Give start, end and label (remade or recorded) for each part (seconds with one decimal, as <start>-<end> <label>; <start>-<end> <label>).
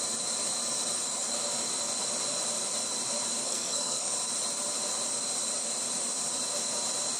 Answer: 0.0-3.4 recorded; 3.4-4.1 remade; 4.1-7.2 recorded